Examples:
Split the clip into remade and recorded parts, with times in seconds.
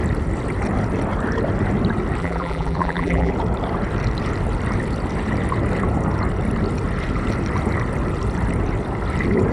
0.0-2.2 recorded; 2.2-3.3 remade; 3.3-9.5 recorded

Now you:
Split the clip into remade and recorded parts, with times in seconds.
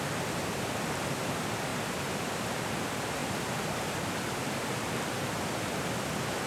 0.0-1.7 recorded; 1.7-2.7 remade; 2.7-3.2 recorded; 3.2-4.6 remade; 4.6-6.5 recorded